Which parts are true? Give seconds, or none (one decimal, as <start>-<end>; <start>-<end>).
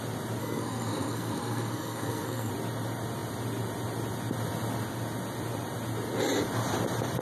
0.0-0.4; 2.5-7.2